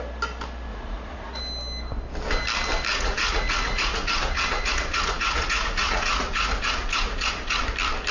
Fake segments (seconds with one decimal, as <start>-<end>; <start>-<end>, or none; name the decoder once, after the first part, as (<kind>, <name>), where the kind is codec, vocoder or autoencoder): 0.7-1.4 (vocoder, Vocos); 2.9-7.6